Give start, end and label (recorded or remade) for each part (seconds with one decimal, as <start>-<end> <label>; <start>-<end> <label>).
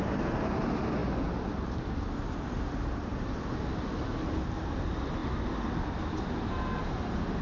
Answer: 0.0-7.4 recorded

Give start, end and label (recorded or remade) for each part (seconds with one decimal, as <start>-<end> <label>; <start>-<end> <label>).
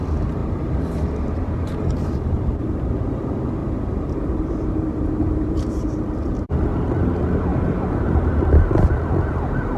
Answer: 0.0-0.4 recorded; 0.4-2.7 remade; 2.7-3.6 recorded; 3.6-5.7 remade; 5.7-7.5 recorded; 7.5-8.3 remade; 8.3-9.8 recorded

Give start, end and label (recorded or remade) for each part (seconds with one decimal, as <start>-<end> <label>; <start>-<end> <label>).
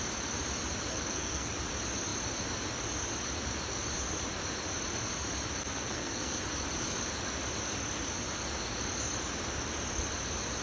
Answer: 0.0-0.9 recorded; 0.9-1.5 remade; 1.5-5.7 recorded; 5.7-6.4 remade; 6.4-10.6 recorded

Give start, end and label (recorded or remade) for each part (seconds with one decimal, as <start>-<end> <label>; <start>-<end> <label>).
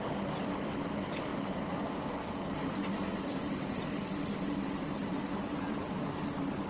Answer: 0.0-1.3 recorded; 1.3-3.8 remade; 3.8-5.0 recorded; 5.0-6.0 remade; 6.0-6.7 recorded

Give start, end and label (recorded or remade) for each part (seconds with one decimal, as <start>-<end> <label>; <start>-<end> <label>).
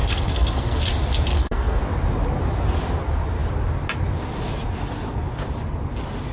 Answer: 0.0-0.8 remade; 0.8-1.3 recorded; 1.3-1.8 remade; 1.8-6.3 recorded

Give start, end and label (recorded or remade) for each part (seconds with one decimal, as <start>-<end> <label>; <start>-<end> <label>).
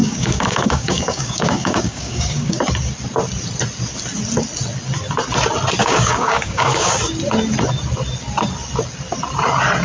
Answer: 0.0-2.6 remade; 2.6-5.8 recorded; 5.8-7.0 remade; 7.0-9.8 recorded